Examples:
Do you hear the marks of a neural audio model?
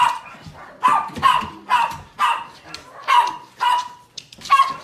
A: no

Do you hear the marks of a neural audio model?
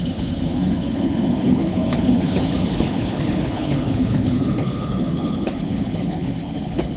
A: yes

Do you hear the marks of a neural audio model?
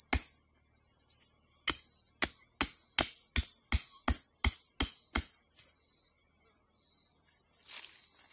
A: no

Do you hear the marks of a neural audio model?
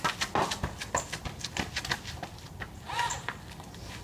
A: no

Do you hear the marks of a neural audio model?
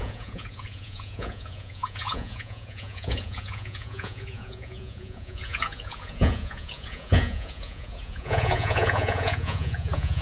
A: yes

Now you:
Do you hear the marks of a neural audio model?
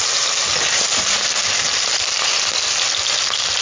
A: no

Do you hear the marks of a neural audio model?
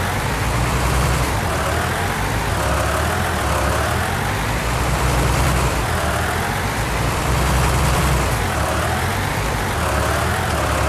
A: yes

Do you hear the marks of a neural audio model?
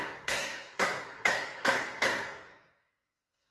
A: yes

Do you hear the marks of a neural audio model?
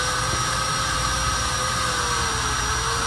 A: no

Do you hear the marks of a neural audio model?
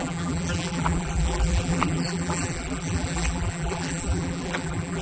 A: yes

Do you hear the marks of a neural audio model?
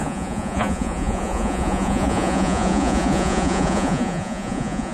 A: yes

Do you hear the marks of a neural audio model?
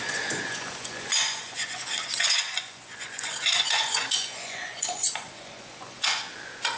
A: yes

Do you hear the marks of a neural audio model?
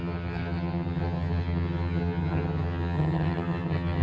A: yes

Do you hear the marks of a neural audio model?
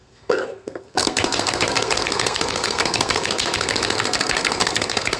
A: yes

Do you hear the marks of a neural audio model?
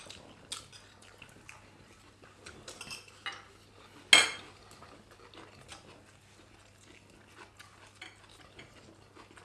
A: no